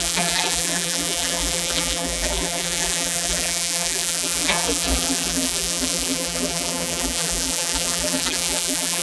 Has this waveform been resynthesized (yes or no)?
yes